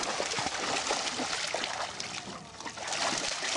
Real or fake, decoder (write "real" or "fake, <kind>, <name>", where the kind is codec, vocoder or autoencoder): real